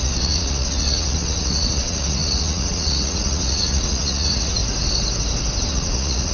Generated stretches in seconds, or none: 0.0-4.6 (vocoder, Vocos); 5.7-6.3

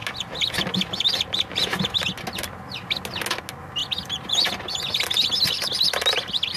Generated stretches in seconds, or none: none

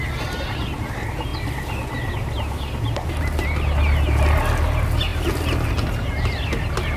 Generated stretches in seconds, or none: none

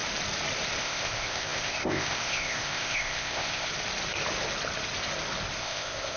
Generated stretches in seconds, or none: 0.8-3.7 (codec, ZipCodec); 5.6-6.2

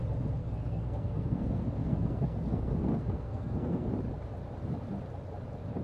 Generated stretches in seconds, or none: 0.4-3.9 (codec, SNAC)

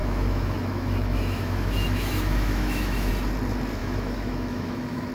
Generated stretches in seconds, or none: 0.0-3.1 (autoencoder, DAC-VAE); 3.8-5.1

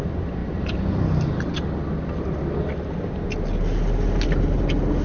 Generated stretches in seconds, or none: none